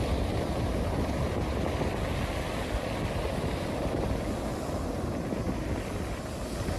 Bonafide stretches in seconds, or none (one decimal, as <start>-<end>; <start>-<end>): 0.0-6.8